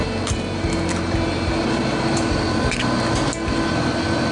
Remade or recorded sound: recorded